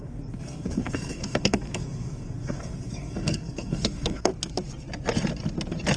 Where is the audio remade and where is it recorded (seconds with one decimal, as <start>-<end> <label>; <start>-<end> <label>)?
0.0-4.3 remade; 4.3-6.0 recorded